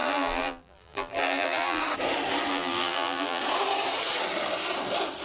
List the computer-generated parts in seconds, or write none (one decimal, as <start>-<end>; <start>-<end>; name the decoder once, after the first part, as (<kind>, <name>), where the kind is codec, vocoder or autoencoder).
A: 0.0-1.8 (vocoder, BigVGAN v2); 2.5-3.4